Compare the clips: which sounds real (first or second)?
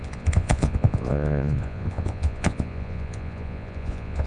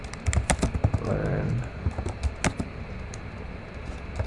second